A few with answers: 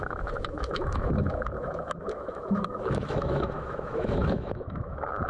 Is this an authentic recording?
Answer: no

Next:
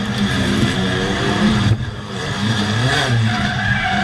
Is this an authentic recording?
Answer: no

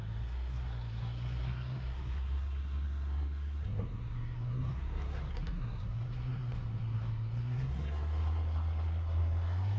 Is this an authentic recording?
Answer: no